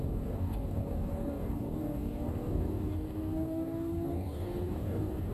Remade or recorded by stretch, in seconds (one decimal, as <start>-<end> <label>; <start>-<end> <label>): 0.0-5.3 remade